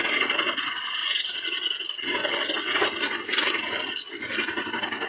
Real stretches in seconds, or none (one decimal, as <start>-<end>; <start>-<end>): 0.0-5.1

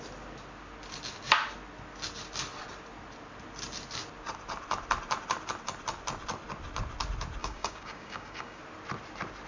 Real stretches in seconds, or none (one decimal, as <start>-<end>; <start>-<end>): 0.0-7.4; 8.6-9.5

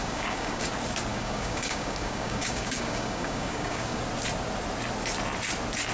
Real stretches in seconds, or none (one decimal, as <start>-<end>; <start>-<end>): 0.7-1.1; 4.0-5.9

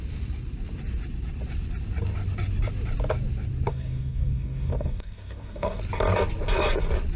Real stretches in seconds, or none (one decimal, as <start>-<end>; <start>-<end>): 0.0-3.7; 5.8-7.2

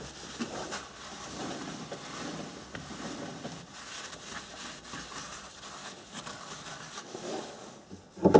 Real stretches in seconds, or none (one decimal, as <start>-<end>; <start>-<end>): 0.0-5.8; 8.0-8.4

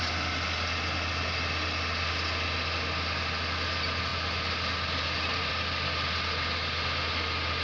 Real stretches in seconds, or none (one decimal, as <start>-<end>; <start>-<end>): 0.0-7.6

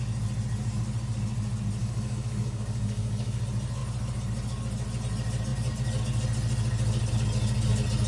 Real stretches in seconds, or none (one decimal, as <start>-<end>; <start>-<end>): 0.0-1.8; 3.4-8.1